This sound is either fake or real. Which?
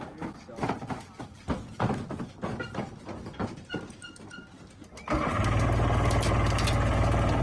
real